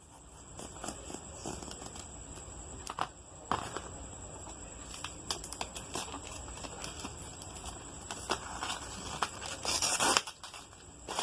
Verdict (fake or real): fake